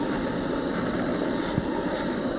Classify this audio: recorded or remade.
recorded